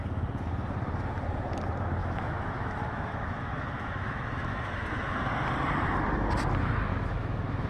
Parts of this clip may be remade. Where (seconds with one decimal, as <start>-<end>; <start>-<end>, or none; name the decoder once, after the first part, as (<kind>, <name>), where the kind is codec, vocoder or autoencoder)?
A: 2.0-5.2 (autoencoder, DAC-VAE); 6.9-7.7